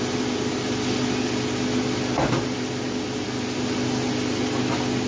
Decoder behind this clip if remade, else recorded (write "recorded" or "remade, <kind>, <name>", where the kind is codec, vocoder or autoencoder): recorded